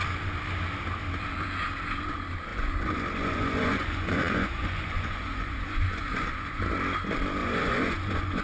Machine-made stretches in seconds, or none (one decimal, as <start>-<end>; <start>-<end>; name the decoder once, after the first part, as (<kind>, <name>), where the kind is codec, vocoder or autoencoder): 2.5-6.6 (vocoder, Vocos); 7.4-8.4